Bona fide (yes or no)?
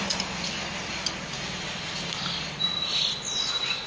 yes